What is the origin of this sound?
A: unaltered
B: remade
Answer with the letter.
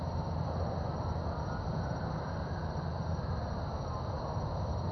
A